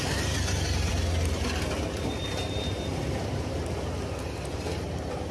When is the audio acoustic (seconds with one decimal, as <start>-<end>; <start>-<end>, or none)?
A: 0.0-5.3